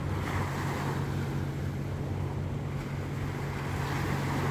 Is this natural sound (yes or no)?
yes